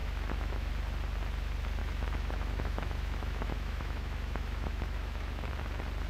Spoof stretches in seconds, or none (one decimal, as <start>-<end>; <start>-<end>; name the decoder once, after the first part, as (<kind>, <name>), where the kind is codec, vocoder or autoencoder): 0.0-0.7 (autoencoder, DAC-VAE); 1.8-5.5